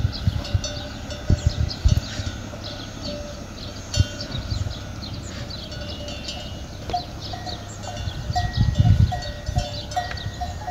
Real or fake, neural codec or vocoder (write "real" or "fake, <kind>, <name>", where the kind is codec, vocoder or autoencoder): real